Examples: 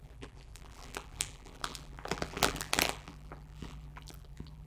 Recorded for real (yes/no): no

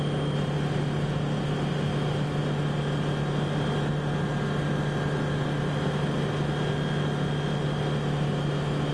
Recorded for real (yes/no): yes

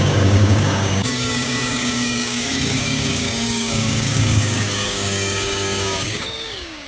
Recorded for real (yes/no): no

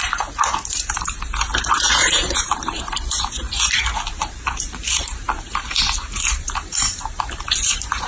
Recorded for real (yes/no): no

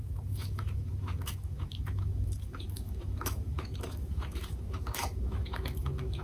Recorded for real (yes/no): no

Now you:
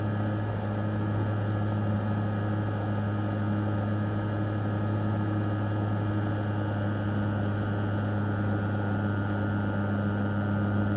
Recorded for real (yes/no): yes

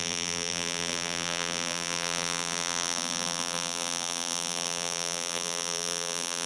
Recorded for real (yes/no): no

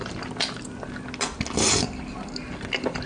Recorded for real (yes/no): yes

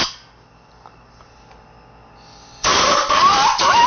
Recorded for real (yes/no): yes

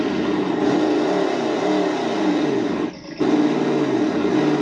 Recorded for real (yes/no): yes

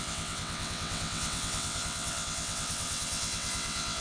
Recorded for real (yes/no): no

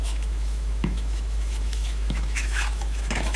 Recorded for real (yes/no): no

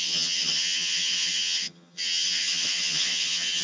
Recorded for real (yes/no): no